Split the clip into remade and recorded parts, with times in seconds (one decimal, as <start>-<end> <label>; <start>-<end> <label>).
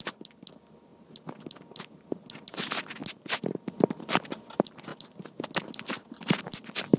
0.0-7.0 recorded